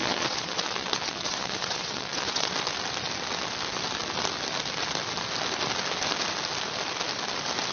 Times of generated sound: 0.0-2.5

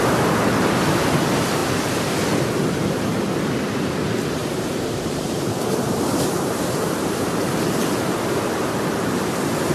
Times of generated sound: 4.4-9.1